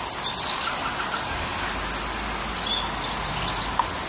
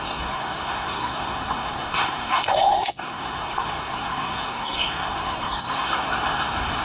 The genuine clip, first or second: first